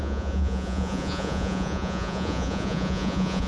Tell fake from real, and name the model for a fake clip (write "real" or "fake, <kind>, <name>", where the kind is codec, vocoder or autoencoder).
fake, vocoder, Vocos